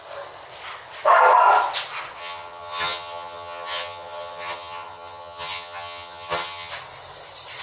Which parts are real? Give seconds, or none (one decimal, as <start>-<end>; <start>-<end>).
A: 0.0-2.2; 6.7-7.6